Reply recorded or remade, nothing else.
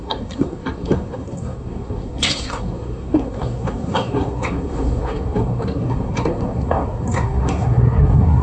remade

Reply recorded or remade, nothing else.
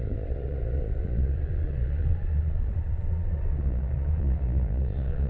remade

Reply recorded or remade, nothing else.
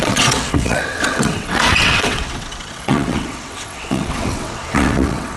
remade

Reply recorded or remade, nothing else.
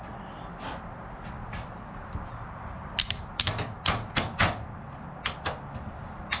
recorded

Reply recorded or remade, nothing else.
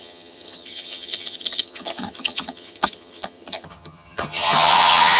remade